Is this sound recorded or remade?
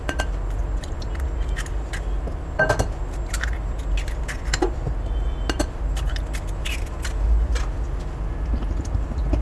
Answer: recorded